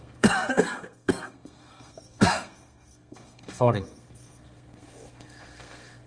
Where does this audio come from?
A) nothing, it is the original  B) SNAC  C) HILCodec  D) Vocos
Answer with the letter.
B